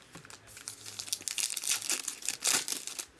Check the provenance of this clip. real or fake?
real